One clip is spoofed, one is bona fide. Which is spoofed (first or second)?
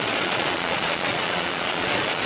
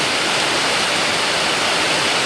first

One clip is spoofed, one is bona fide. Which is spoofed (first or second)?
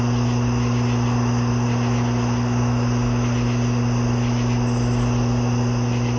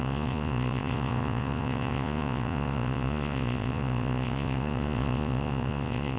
second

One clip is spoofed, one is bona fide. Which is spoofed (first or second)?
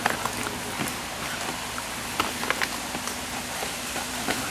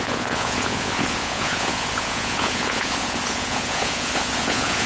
second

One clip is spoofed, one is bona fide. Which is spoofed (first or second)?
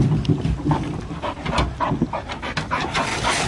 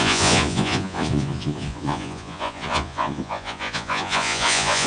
second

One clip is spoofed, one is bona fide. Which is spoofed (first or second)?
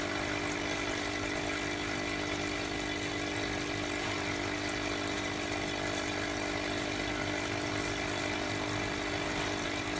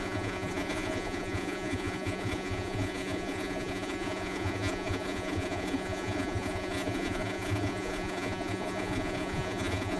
second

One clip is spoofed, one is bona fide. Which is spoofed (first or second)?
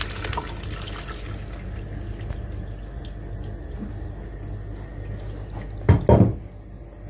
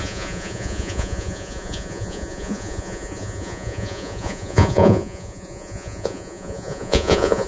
second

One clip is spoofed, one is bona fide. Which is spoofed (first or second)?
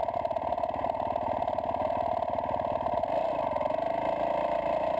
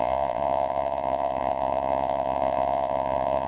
second